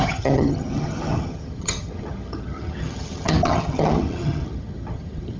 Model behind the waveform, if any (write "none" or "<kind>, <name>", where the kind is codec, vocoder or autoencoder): vocoder, HiFi-GAN